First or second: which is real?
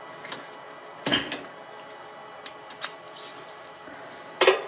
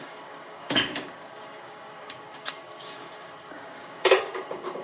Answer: first